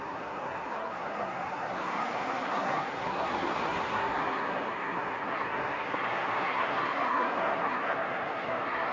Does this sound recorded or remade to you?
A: remade